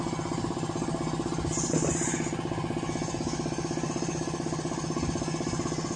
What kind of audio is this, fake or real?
real